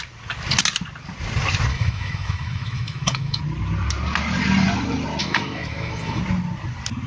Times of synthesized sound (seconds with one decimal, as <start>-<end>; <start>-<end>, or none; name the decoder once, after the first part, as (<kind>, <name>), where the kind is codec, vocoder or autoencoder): 1.7-3.4 (autoencoder, DAC-VAE); 5.2-6.2